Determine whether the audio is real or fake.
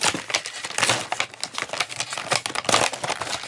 real